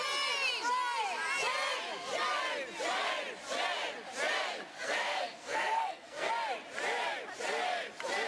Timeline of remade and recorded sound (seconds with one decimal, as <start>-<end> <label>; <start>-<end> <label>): 0.0-4.7 recorded; 4.7-6.3 remade; 6.3-8.3 recorded